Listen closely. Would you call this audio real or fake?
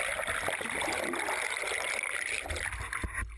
real